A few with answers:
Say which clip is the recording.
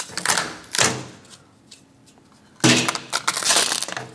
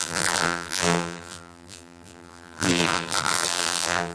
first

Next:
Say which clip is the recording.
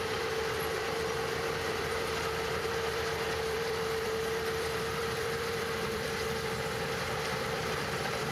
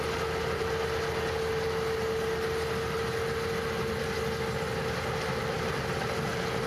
second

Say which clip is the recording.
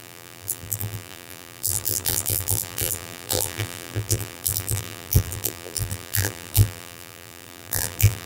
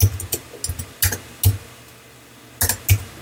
second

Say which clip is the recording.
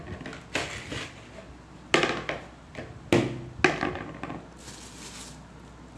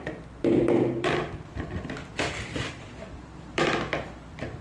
first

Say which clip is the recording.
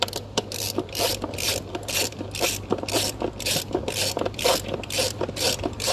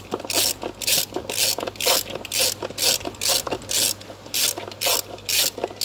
second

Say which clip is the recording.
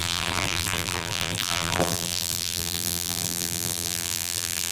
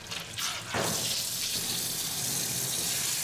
second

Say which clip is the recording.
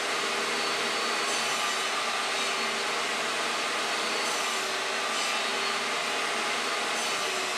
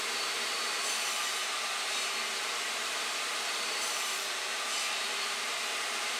first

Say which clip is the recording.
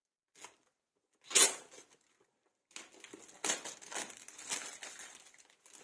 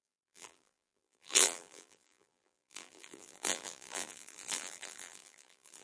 first